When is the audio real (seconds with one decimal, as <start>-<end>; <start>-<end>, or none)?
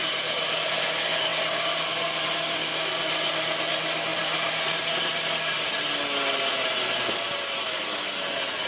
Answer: 0.0-4.1; 4.9-8.7